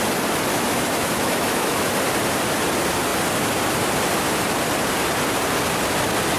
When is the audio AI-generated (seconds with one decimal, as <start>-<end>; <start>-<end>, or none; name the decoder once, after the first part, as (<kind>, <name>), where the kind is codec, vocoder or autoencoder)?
0.5-1.9 (autoencoder, DAC-VAE)